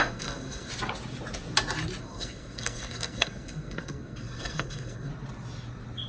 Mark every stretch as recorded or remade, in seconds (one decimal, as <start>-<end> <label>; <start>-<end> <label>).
0.0-0.7 remade; 0.7-2.0 recorded; 2.0-5.1 remade; 5.1-6.1 recorded